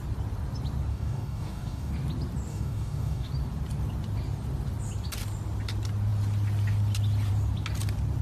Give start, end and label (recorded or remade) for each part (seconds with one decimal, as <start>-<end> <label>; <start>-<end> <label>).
0.0-0.9 recorded; 0.9-1.9 remade; 1.9-2.5 recorded; 2.5-3.3 remade; 3.3-8.2 recorded